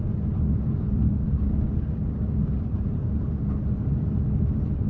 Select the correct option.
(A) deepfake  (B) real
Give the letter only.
B